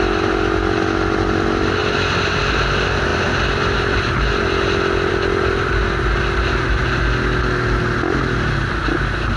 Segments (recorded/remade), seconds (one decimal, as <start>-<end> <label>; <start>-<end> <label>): 0.0-9.4 recorded